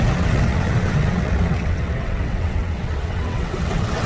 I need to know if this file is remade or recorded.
remade